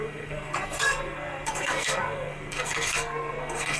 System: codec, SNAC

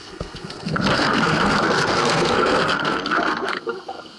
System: codec, SNAC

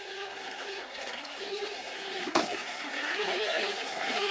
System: codec, SNAC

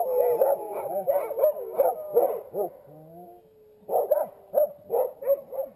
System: none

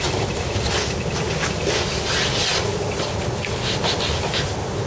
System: none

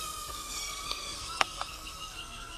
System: codec, SNAC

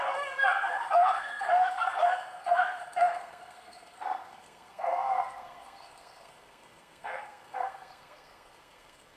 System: codec, SNAC